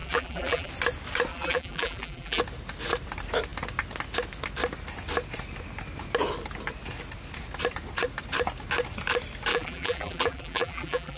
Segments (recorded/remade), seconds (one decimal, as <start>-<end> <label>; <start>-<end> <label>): 0.0-0.7 remade; 0.7-1.3 recorded; 1.3-2.4 remade; 2.4-9.5 recorded; 9.5-11.2 remade